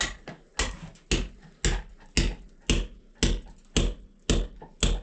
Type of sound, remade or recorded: recorded